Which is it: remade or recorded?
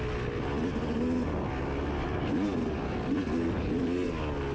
recorded